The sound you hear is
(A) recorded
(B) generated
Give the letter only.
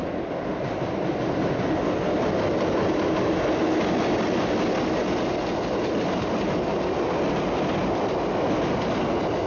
A